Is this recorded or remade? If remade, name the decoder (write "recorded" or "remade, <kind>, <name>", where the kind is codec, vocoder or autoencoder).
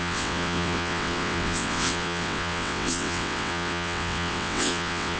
remade, vocoder, WaveNeXt